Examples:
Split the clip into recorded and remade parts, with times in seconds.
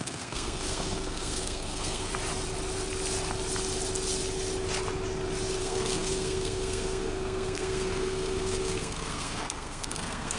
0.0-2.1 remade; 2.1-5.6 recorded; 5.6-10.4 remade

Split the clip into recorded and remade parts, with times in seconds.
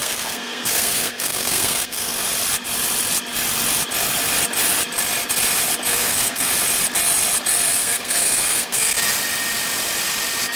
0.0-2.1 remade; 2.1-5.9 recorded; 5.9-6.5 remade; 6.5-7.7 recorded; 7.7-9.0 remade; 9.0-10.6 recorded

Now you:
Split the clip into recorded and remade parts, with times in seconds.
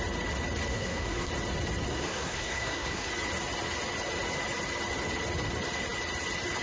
0.0-0.7 recorded; 0.7-1.3 remade; 1.3-1.9 recorded; 1.9-3.1 remade; 3.1-6.6 recorded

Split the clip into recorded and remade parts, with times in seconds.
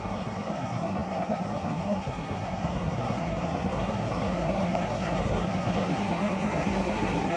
0.0-7.4 remade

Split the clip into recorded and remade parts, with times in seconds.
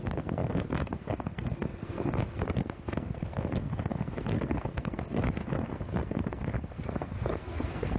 0.0-8.0 remade